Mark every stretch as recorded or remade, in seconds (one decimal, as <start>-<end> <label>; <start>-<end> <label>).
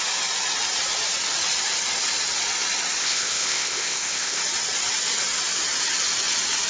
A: 0.0-3.0 recorded; 3.0-4.4 remade; 4.4-6.7 recorded